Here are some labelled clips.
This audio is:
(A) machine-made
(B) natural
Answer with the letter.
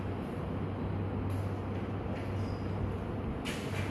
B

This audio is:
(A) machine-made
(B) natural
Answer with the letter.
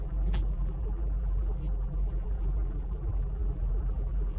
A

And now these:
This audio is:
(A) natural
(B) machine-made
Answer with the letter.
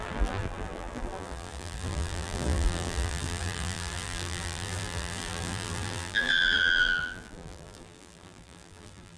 B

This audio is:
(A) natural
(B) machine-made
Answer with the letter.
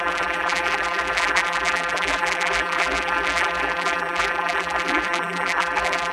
B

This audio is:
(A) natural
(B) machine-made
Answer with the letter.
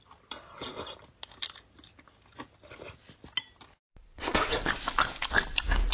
A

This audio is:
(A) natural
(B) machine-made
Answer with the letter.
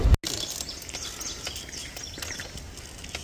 A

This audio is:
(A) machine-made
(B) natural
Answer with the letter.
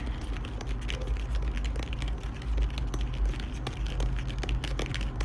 B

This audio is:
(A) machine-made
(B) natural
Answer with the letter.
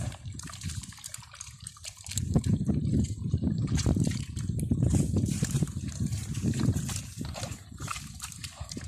A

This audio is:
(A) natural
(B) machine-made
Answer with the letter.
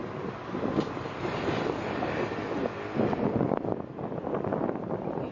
A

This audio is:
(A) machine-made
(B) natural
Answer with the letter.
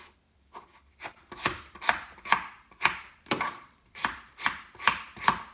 B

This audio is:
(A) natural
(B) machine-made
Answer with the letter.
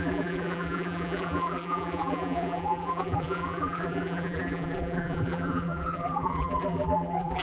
B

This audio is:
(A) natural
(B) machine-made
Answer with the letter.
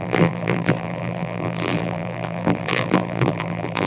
B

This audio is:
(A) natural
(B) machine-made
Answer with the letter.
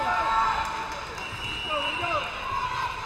B